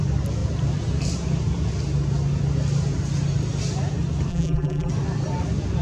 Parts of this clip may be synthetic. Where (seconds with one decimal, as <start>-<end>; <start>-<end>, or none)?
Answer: 4.3-4.9

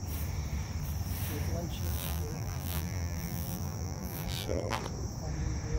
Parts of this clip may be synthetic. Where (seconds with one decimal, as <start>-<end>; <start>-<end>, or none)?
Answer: 1.8-4.8